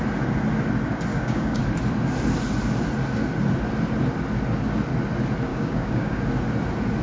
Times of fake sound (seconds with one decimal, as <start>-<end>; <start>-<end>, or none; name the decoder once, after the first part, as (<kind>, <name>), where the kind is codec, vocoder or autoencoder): 1.1-1.6 (codec, DAC); 5.5-6.2